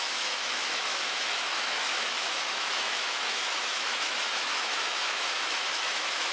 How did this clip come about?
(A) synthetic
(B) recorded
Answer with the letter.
A